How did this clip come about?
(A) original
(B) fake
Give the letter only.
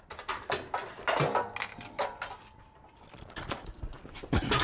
A